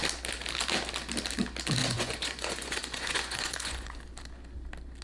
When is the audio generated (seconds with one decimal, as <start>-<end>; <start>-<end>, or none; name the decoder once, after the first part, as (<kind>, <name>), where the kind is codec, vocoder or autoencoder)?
1.8-4.0 (vocoder, Vocos)